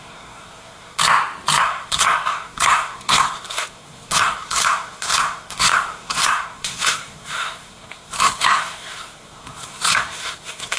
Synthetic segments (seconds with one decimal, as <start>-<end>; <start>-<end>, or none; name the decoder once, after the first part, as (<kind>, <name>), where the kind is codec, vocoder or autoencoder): 0.0-1.0 (codec, SNAC); 1.6-10.8